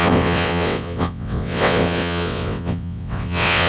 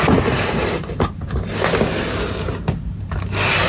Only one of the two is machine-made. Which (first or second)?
first